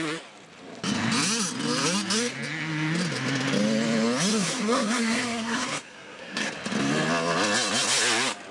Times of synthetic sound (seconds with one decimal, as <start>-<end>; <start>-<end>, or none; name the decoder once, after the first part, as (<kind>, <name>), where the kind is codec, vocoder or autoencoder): 4.3-6.5 (codec, SNAC)